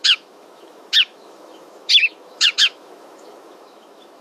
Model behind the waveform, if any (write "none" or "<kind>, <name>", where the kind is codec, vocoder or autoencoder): autoencoder, DAC-VAE